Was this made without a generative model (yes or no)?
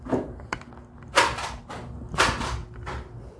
yes